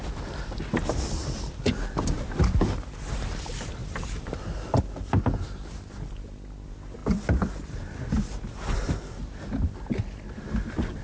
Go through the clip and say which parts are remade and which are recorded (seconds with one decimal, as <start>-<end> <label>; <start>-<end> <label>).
0.0-11.0 recorded